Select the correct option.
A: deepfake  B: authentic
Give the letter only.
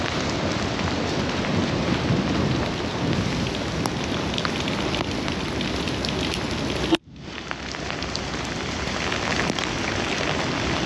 B